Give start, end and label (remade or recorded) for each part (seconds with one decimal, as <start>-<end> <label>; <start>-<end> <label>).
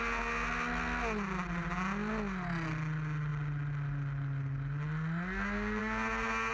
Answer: 0.0-6.5 recorded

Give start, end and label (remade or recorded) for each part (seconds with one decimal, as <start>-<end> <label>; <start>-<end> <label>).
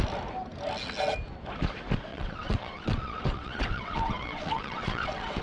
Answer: 0.0-2.1 recorded; 2.1-5.4 remade